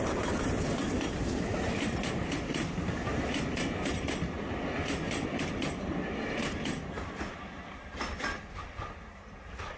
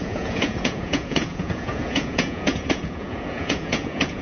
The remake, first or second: second